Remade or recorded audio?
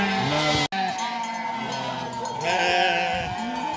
recorded